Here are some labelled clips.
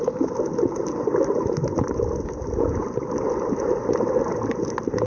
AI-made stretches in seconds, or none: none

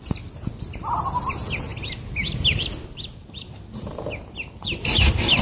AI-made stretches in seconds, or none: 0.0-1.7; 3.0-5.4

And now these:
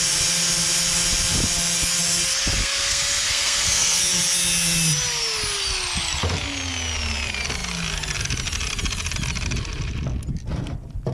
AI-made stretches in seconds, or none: 2.6-4.0

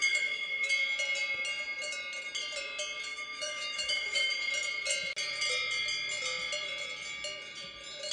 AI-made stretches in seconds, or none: 0.0-0.7; 3.1-4.3

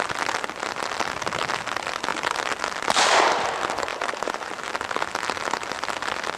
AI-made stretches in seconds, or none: 3.9-4.5

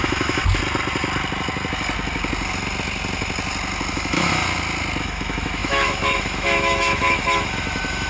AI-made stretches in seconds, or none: 0.0-0.4; 3.9-4.4; 5.0-8.1